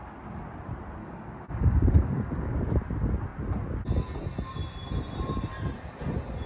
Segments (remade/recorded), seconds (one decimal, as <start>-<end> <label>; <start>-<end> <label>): 0.0-1.0 recorded; 1.0-2.5 remade; 2.5-6.5 recorded